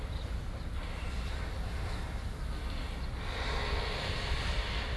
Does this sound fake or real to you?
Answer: fake